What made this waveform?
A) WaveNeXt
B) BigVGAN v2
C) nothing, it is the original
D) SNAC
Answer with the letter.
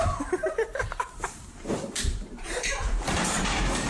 B